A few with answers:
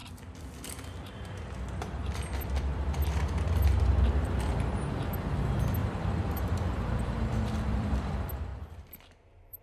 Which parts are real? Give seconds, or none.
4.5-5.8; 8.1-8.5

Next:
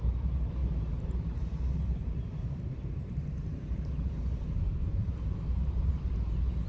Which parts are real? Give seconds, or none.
none